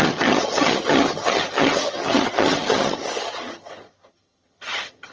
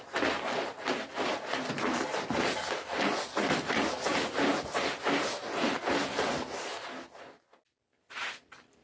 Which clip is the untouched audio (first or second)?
second